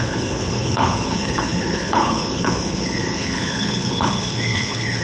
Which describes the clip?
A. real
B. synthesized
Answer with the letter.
B